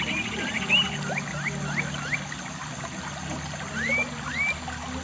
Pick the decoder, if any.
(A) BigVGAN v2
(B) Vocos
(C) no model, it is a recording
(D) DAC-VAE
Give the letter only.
C